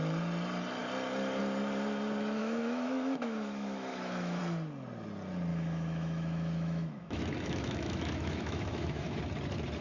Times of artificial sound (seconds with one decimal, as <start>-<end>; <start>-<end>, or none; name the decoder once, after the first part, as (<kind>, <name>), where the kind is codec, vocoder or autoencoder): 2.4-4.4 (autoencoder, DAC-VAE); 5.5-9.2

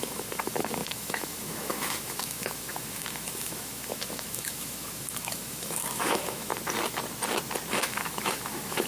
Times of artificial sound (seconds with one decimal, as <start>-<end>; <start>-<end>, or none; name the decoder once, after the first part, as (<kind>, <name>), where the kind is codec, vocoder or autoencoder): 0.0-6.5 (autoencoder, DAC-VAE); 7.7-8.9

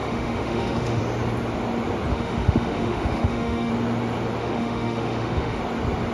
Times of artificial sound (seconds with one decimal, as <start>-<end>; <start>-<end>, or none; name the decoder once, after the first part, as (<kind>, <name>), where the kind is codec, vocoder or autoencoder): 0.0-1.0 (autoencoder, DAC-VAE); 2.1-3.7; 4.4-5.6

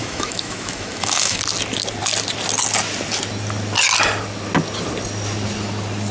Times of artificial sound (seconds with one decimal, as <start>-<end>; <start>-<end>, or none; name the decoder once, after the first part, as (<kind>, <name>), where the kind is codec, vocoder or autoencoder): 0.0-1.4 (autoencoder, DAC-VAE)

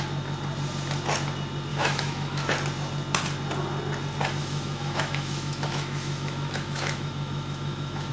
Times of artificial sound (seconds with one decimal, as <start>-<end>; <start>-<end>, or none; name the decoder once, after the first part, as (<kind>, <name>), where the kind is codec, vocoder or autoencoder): 1.7-2.5 (autoencoder, DAC-VAE); 4.4-8.1

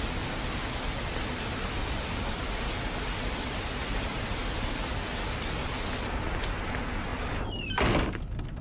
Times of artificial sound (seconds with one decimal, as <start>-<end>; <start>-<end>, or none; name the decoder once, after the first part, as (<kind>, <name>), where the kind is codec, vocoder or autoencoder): none